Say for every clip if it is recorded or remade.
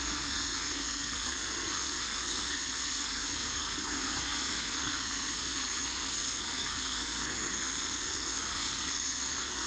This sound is remade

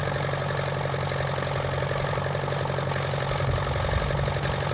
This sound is recorded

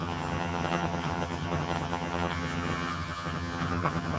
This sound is remade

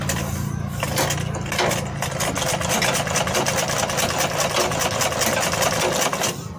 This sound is recorded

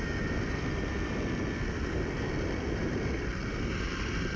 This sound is recorded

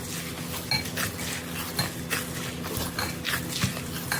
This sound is recorded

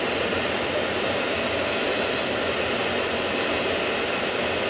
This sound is recorded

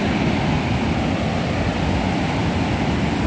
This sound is recorded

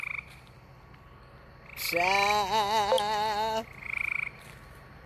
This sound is recorded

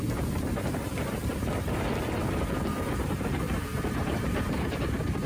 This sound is remade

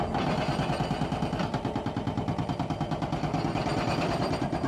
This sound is recorded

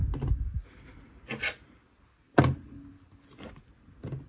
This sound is recorded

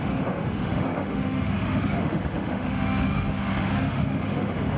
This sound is remade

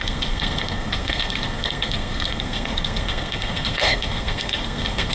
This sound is remade